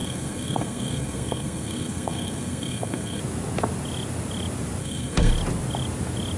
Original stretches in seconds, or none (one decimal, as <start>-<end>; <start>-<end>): 3.2-4.8; 5.3-6.4